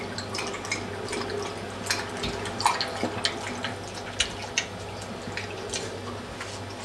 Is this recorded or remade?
recorded